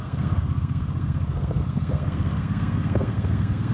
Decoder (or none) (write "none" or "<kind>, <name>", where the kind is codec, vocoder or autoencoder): codec, SNAC